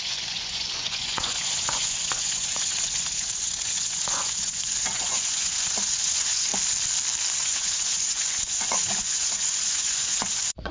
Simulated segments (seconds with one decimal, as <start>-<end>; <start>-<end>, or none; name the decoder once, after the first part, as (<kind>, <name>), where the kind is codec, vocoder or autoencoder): 0.0-6.5 (vocoder, Vocos); 7.4-10.7